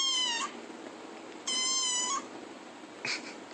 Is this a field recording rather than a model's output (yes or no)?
yes